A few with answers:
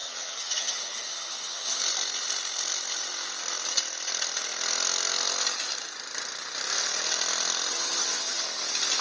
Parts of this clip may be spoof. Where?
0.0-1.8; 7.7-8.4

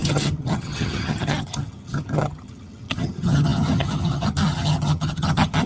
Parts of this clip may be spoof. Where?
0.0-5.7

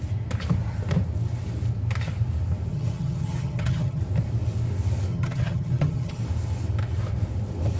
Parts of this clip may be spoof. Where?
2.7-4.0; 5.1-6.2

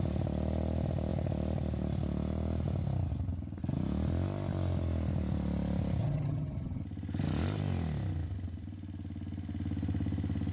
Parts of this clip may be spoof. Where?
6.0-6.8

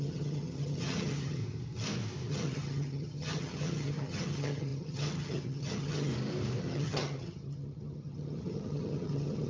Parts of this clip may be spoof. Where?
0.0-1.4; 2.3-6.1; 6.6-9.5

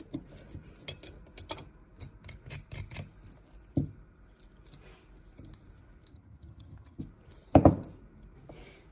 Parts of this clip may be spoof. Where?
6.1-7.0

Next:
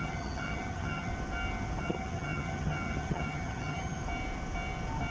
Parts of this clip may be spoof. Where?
0.0-1.1; 1.8-4.0

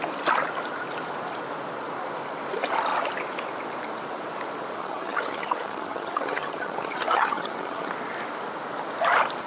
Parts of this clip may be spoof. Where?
4.8-7.9